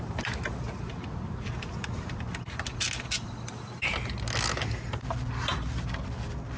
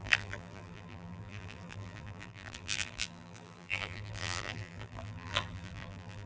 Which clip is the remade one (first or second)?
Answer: second